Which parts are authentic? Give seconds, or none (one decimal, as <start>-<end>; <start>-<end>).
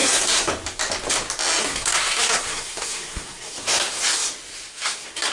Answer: 0.5-1.6; 4.0-4.7